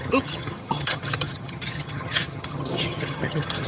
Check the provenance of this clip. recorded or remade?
remade